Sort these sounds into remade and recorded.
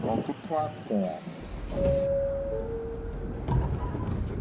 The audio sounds recorded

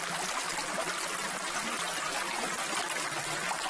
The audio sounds recorded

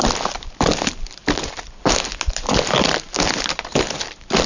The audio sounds recorded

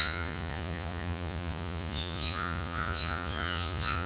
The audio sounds remade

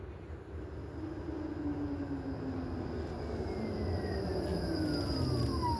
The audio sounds recorded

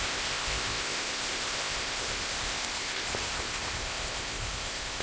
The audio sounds remade